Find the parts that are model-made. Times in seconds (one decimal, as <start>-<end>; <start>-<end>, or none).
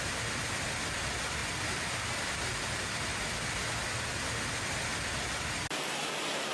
none